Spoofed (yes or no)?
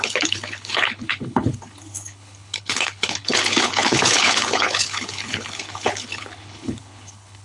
yes